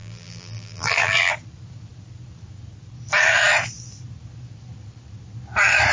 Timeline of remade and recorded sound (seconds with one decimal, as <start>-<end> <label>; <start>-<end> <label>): 0.0-1.3 remade; 1.3-5.9 recorded